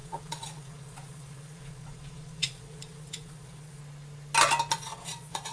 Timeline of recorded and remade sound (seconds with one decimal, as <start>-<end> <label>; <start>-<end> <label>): 0.0-3.8 remade; 3.8-4.7 recorded; 4.7-5.5 remade